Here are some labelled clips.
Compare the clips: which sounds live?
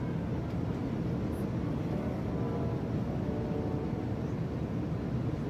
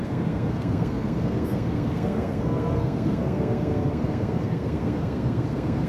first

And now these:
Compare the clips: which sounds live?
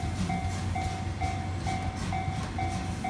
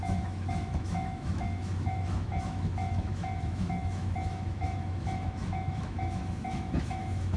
first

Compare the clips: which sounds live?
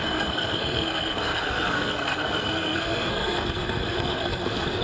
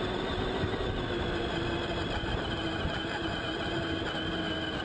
second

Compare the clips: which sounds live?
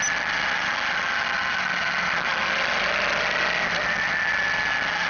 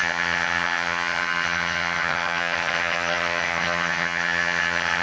first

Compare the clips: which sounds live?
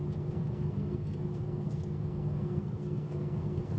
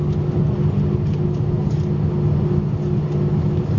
second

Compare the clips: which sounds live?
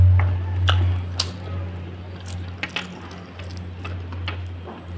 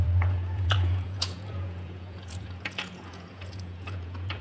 first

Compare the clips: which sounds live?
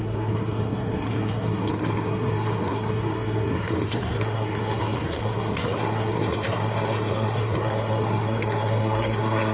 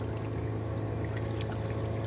second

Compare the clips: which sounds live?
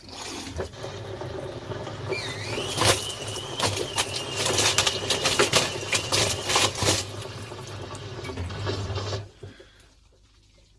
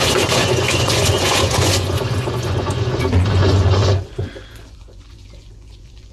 first